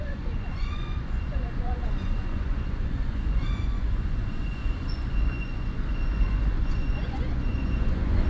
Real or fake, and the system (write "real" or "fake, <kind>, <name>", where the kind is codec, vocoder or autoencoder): fake, vocoder, Vocos